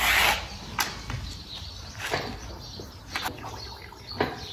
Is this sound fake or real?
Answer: real